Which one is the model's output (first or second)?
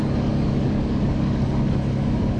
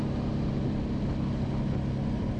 first